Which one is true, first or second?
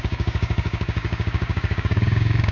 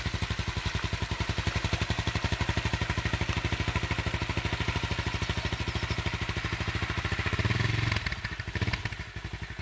second